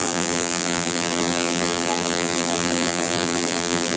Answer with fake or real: fake